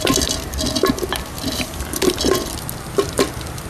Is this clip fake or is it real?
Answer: real